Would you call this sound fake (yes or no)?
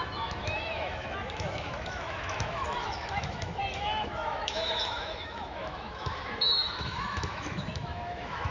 yes